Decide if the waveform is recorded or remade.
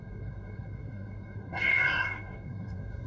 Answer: remade